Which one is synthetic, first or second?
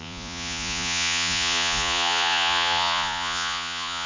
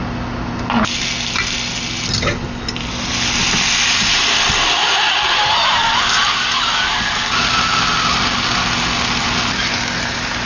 first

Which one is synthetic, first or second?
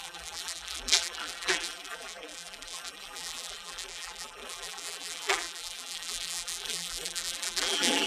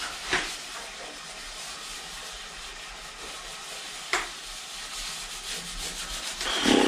first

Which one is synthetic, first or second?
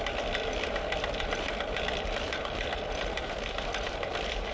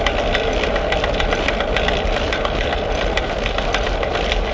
first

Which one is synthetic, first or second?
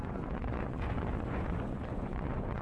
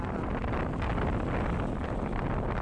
first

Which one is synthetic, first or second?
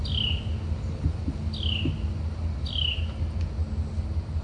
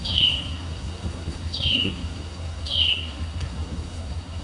second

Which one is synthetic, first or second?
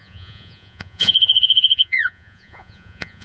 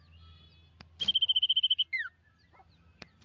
first